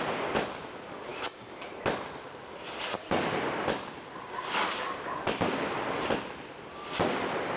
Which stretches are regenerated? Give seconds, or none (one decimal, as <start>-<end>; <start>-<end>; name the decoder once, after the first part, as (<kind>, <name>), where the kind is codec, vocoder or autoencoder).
none